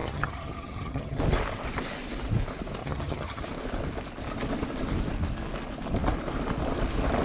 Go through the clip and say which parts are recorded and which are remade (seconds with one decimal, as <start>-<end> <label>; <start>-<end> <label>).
0.0-1.2 remade; 1.2-2.8 recorded; 2.8-3.4 remade; 3.4-7.2 recorded

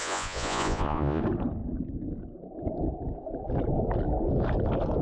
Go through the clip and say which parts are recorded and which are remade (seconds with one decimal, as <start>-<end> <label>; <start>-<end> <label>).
0.0-1.2 remade; 1.2-5.0 recorded

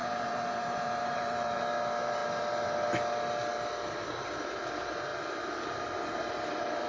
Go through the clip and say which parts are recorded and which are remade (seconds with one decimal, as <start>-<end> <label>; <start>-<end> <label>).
0.0-1.6 remade; 1.6-5.1 recorded; 5.1-6.9 remade

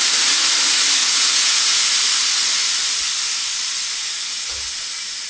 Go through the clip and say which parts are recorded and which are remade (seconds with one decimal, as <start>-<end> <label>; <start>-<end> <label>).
0.0-1.0 recorded; 1.0-1.9 remade; 1.9-5.3 recorded